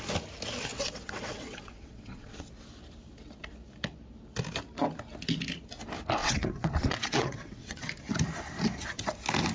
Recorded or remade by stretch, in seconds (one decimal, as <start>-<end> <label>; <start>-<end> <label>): 0.0-0.7 recorded; 0.7-2.5 remade; 2.5-6.2 recorded; 6.2-7.9 remade; 7.9-9.5 recorded